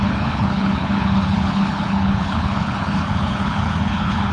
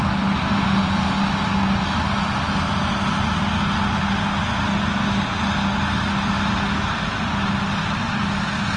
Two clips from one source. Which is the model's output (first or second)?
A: first